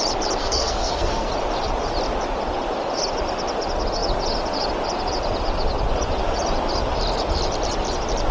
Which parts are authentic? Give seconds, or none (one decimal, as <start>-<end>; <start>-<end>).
0.0-0.4; 1.3-8.3